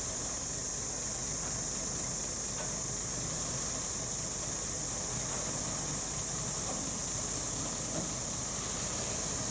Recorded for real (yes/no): yes